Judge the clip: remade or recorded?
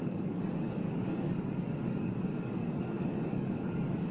remade